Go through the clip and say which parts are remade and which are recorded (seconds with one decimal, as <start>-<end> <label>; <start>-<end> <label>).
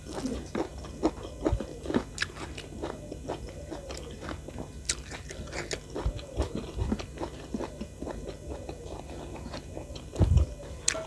0.0-11.1 recorded